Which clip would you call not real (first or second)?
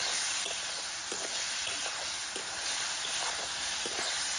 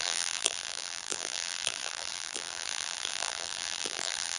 second